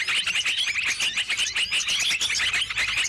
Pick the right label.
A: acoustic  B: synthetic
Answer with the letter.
A